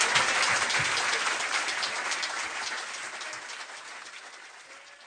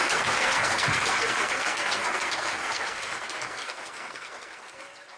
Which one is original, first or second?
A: first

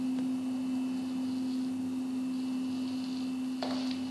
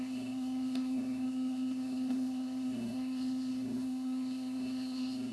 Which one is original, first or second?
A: first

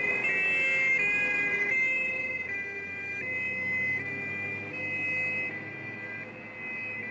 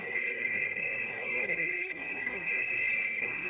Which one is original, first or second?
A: first